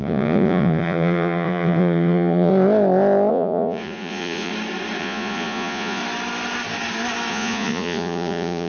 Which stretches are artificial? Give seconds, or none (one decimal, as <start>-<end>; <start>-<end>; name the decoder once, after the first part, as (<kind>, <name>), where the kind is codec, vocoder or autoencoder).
0.0-2.5 (vocoder, Vocos); 3.3-4.5; 5.0-6.0; 7.3-8.7